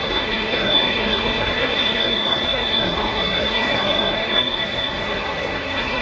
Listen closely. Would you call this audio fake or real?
fake